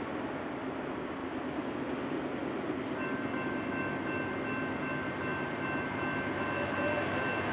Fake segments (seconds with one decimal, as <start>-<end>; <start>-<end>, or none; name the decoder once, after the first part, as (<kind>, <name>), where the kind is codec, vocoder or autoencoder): none